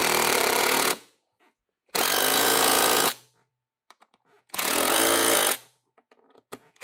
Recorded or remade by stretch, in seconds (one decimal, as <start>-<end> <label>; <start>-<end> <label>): 0.0-0.6 recorded; 0.6-6.8 remade